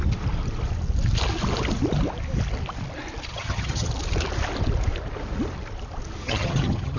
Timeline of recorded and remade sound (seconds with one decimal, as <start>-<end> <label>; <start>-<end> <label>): 0.0-3.3 recorded; 3.3-3.9 remade; 3.9-6.2 recorded; 6.2-7.0 remade